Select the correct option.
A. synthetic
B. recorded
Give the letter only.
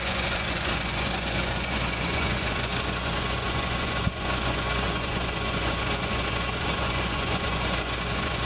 A